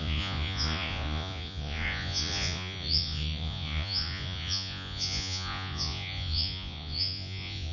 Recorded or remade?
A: remade